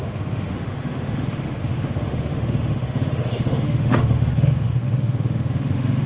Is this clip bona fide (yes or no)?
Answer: no